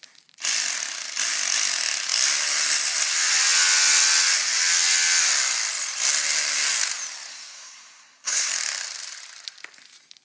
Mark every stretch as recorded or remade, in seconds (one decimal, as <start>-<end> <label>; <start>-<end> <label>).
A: 0.0-7.3 recorded; 7.3-8.5 remade; 8.5-10.2 recorded